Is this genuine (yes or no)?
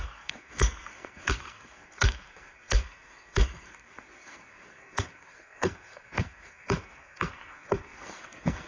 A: no